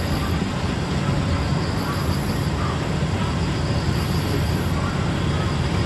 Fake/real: real